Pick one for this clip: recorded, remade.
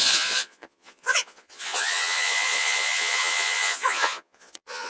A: remade